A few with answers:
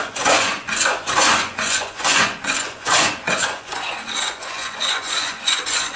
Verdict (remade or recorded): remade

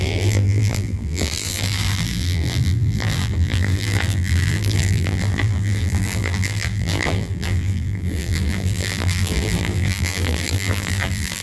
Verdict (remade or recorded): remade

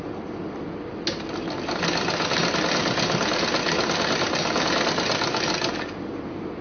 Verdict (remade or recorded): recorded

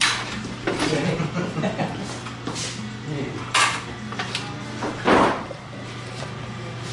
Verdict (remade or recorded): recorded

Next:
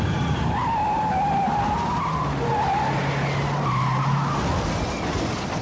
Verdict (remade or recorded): recorded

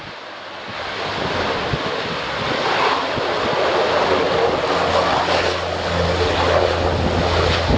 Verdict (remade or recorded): recorded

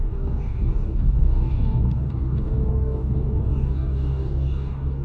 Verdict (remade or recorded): remade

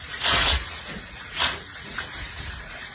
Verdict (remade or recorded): remade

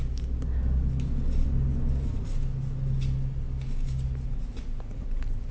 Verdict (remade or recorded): recorded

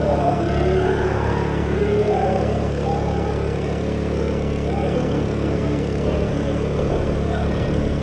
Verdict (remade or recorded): remade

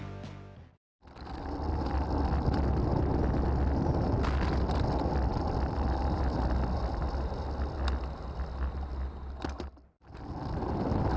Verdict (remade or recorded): recorded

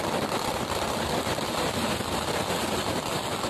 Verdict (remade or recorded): recorded